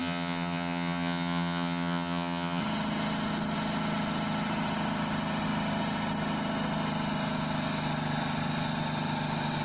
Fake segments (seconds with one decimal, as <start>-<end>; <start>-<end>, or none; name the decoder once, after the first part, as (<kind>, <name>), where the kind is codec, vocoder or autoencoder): 0.0-2.6 (vocoder, HiFi-GAN)